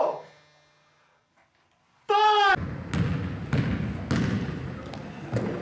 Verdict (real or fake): real